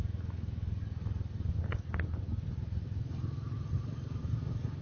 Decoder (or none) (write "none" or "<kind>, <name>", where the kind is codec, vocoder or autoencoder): none